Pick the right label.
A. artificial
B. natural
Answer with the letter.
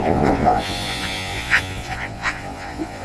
A